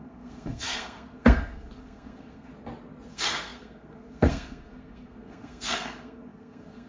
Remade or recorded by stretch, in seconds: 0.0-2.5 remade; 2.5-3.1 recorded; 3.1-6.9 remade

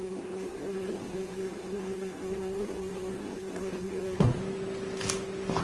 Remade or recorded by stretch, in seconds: 0.0-4.4 remade; 4.4-5.6 recorded

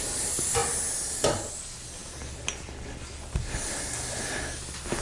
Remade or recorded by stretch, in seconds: 0.0-5.0 recorded

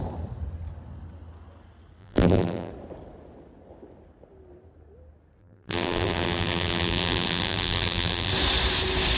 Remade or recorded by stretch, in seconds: 0.0-2.0 recorded; 2.0-2.7 remade; 2.7-5.4 recorded; 5.4-8.3 remade; 8.3-9.2 recorded

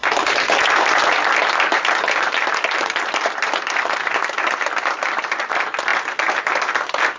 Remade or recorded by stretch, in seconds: 0.0-7.2 recorded

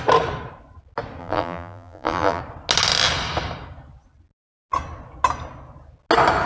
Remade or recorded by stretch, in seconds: 0.0-1.2 recorded; 1.2-2.4 remade; 2.4-6.5 recorded

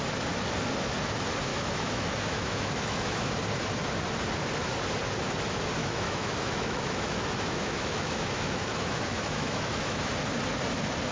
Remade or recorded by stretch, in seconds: 0.0-1.5 recorded; 1.5-3.3 remade; 3.3-5.8 recorded; 5.8-10.1 remade; 10.1-11.1 recorded